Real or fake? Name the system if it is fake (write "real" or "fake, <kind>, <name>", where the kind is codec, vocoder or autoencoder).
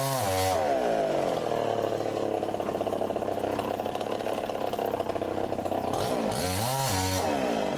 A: real